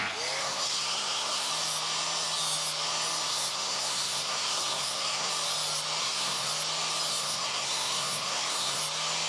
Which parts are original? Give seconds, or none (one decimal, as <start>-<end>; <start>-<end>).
0.0-0.4; 1.5-3.3; 5.3-6.0; 6.5-7.1; 8.8-9.3